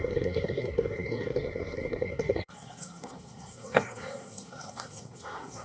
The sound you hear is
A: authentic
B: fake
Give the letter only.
B